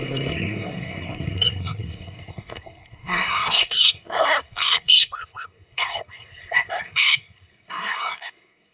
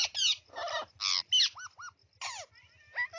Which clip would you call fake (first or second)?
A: first